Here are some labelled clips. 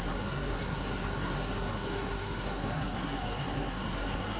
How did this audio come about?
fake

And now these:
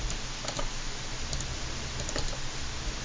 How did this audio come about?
real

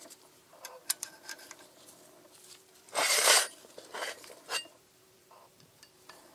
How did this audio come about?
fake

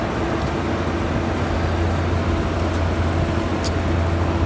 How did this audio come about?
real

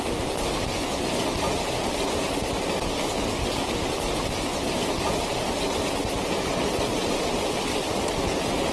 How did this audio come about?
real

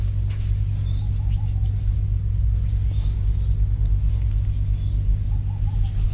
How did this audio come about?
real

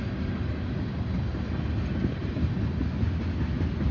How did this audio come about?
real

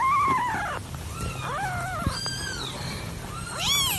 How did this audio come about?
real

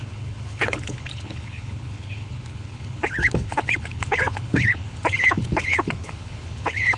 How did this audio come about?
fake